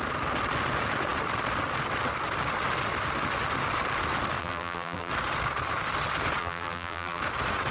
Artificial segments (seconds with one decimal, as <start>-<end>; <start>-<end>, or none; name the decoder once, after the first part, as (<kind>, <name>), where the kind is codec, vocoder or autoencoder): 4.4-5.1 (vocoder, BigVGAN v2); 6.4-7.2